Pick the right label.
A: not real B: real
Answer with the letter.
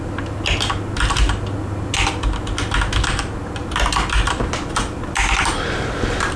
B